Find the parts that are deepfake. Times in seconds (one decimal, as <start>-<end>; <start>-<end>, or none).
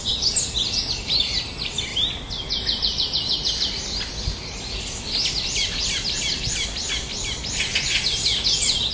none